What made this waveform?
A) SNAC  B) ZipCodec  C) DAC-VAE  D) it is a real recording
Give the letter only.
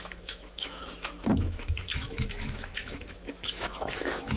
C